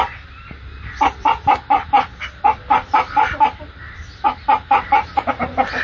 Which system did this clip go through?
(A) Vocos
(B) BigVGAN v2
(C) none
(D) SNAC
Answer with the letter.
C